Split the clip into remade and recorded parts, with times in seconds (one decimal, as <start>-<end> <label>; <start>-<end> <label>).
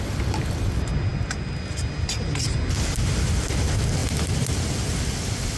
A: 0.0-5.6 recorded